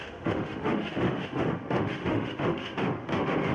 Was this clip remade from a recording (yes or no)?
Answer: yes